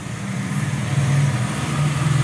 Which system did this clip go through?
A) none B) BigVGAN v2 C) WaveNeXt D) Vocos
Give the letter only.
B